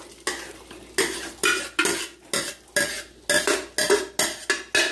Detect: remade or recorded recorded